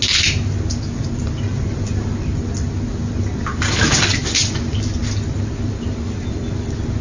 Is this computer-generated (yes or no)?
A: no